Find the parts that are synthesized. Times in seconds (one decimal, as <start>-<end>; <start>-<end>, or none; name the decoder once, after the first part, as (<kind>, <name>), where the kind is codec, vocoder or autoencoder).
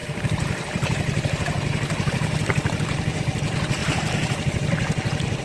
0.0-3.2 (vocoder, BigVGAN v2); 3.8-5.4